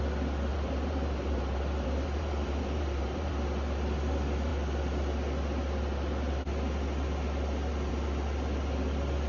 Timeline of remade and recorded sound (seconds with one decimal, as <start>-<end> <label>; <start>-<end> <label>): 0.0-0.5 recorded; 0.5-3.3 remade; 3.3-9.3 recorded

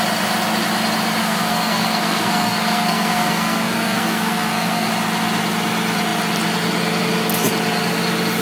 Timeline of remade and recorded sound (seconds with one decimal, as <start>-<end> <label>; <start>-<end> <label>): 0.0-1.2 recorded; 1.2-4.9 remade; 4.9-8.4 recorded

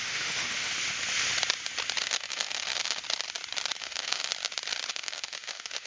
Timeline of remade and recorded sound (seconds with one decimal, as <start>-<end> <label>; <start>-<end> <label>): 0.0-0.7 remade; 0.7-2.0 recorded; 2.0-3.0 remade; 3.0-3.8 recorded; 3.8-4.3 remade; 4.3-4.9 recorded; 4.9-5.9 remade

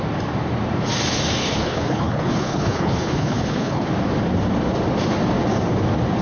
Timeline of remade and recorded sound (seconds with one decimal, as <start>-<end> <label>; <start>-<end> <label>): 0.0-1.4 recorded; 1.4-3.9 remade; 3.9-6.2 recorded

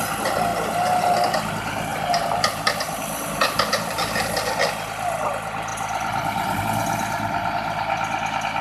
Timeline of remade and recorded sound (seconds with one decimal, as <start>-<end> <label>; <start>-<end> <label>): 0.0-1.9 recorded; 1.9-4.7 remade; 4.7-8.6 recorded